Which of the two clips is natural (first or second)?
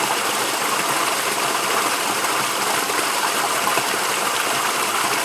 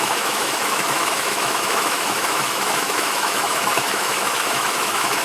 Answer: first